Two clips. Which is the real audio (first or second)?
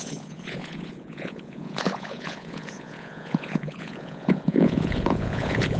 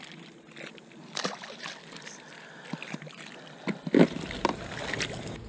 second